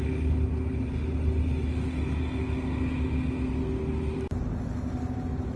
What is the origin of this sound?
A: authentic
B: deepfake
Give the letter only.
A